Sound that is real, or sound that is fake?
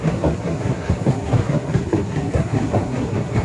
fake